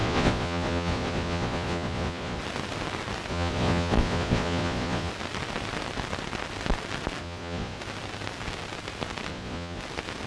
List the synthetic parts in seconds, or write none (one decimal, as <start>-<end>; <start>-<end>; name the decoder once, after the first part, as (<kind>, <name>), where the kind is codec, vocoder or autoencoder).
0.0-2.4 (vocoder, Vocos); 3.3-5.1; 7.2-7.8; 9.3-9.8